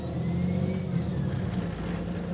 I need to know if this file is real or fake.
real